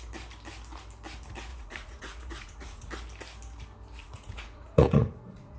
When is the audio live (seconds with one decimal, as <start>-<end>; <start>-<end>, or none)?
0.0-1.5; 2.9-4.0